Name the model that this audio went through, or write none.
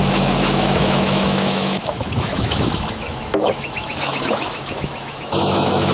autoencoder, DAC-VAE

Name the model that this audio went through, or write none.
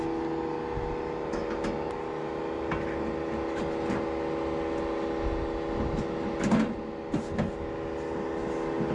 none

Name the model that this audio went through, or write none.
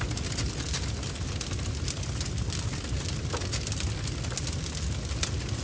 none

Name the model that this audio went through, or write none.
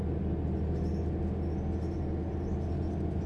none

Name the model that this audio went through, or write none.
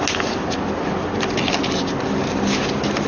none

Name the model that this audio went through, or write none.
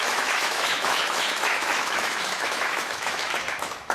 autoencoder, DAC-VAE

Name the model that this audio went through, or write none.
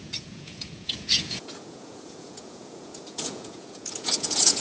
vocoder, Vocos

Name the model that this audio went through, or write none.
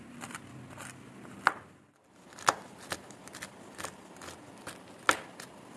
none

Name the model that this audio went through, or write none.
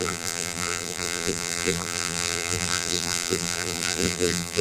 vocoder, BigVGAN v2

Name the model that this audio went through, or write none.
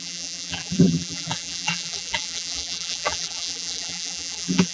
vocoder, BigVGAN v2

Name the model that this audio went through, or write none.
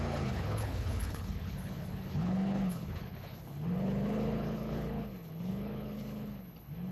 codec, HILCodec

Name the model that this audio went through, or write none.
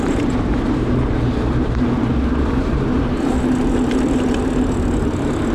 vocoder, BigVGAN v2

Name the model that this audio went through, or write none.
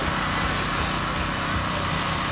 none